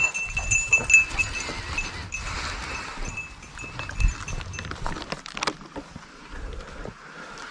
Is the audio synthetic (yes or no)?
no